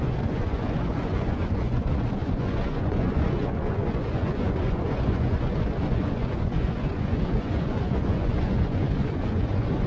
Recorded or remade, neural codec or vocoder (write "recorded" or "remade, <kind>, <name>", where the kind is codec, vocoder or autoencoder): remade, vocoder, Vocos